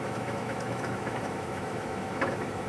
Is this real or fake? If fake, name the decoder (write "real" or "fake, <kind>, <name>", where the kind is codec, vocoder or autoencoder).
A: fake, autoencoder, DAC-VAE